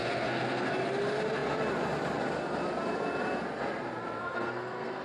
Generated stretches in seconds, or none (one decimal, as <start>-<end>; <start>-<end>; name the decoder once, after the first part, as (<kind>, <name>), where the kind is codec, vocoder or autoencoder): 0.0-0.7 (codec, SNAC); 4.2-5.0